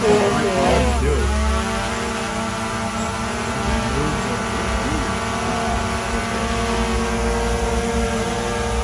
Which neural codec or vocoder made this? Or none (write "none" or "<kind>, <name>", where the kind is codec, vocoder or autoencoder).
none